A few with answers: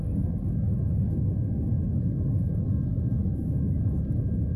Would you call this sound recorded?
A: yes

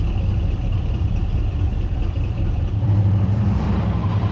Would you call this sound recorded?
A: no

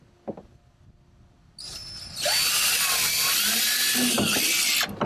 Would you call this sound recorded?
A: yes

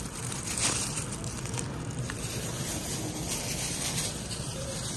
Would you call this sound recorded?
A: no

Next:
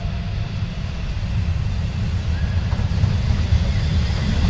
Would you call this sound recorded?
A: yes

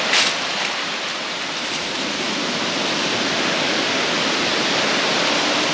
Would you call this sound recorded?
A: yes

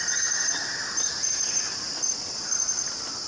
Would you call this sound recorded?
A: yes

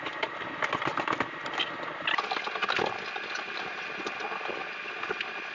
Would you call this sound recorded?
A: yes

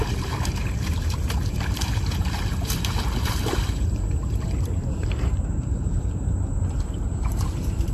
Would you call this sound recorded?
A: no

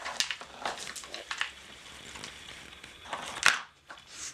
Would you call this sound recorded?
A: yes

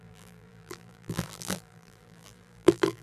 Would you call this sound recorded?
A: no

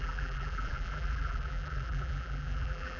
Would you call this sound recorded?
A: no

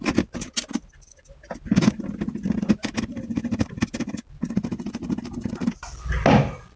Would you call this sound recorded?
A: yes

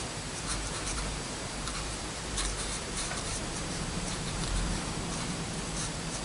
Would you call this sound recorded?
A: no